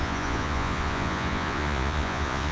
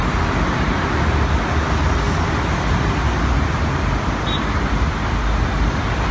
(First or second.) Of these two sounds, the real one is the second